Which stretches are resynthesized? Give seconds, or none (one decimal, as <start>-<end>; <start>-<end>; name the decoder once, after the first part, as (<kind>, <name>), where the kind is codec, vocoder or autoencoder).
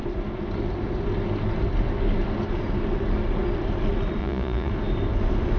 4.2-4.7 (vocoder, Vocos)